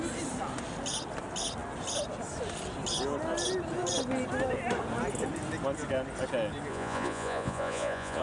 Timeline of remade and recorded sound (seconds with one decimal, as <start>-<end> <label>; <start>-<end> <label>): 0.0-6.7 recorded; 6.7-8.2 remade